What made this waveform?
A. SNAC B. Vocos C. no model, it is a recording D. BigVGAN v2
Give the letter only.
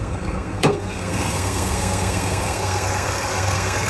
A